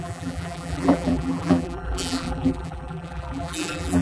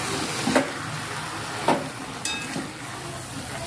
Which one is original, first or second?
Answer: second